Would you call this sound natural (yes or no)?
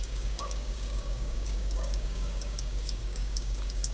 no